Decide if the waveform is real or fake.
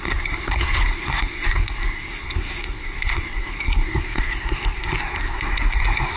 fake